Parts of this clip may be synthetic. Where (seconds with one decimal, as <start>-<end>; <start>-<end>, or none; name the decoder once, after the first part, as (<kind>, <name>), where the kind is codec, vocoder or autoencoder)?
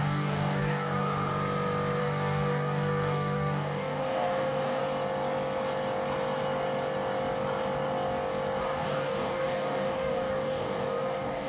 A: 0.0-1.3 (codec, DAC); 2.0-4.8; 8.6-11.5